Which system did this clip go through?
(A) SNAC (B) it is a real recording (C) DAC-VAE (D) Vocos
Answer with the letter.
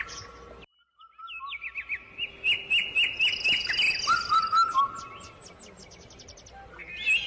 B